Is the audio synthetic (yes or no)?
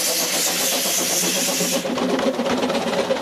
no